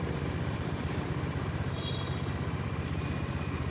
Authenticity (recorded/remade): recorded